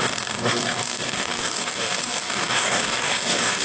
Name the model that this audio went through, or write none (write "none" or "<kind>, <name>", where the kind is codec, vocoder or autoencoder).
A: codec, DAC